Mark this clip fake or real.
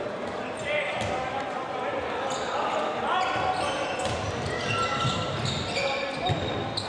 real